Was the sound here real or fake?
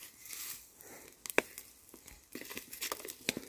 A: real